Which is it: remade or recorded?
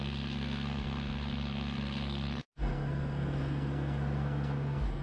remade